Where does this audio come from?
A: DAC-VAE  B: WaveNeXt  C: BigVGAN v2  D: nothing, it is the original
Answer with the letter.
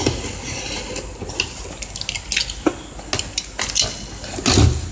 D